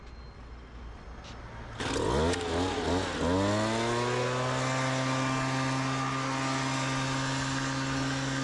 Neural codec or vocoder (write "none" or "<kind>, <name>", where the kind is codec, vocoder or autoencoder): none